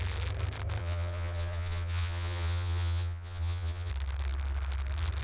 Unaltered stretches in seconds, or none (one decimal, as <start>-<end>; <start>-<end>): 0.0-0.8; 3.9-5.2